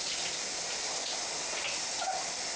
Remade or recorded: recorded